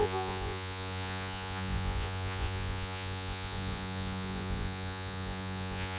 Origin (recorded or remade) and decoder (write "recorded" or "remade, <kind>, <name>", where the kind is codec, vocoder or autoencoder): remade, vocoder, Vocos